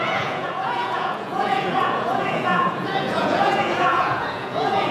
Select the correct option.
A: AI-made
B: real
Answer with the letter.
A